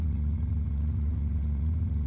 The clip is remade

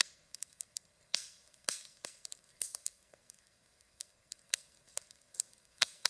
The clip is remade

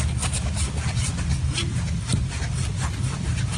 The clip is recorded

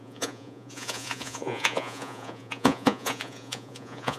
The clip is remade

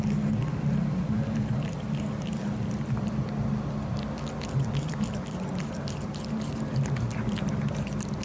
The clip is recorded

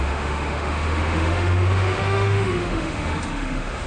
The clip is remade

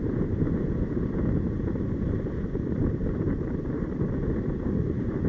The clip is remade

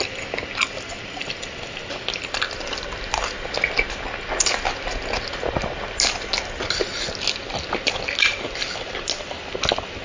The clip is recorded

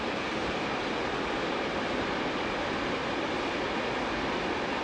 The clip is recorded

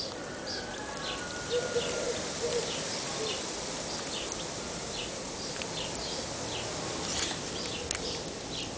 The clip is remade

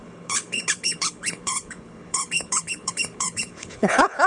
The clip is remade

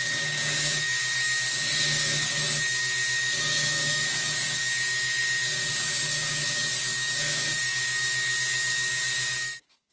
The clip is remade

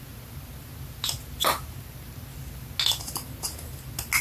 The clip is recorded